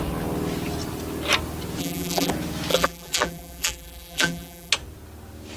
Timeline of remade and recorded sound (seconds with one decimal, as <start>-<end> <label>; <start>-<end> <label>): 0.0-1.8 recorded; 1.8-2.3 remade; 2.3-2.7 recorded; 2.7-4.7 remade; 4.7-5.6 recorded